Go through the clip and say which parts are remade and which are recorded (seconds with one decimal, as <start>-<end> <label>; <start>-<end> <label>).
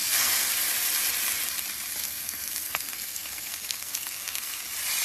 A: 0.0-0.5 remade; 0.5-2.0 recorded; 2.0-4.6 remade; 4.6-5.0 recorded